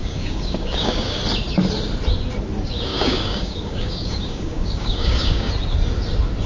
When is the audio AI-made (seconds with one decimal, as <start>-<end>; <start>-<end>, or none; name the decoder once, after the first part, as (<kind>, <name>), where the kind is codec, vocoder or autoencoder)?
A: 0.0-1.2 (codec, DAC); 2.9-5.5